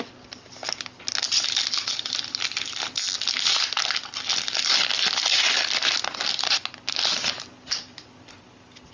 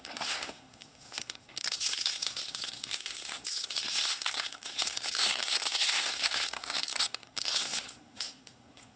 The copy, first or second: second